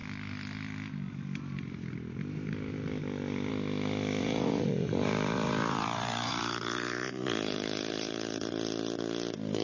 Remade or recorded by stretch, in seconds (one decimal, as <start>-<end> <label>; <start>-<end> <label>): 0.0-4.2 recorded; 4.2-8.5 remade; 8.5-9.6 recorded